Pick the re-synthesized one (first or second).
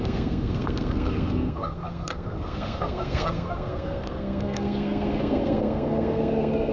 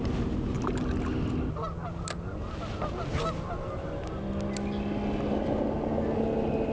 first